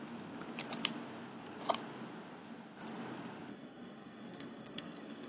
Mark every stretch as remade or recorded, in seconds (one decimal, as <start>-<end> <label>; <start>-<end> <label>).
0.0-3.5 recorded; 3.5-5.3 remade